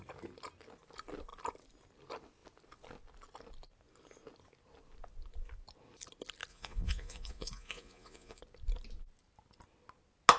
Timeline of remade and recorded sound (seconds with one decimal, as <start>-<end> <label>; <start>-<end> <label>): 0.0-6.5 recorded; 6.5-8.4 remade; 8.4-10.4 recorded